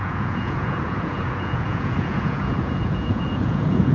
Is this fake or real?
fake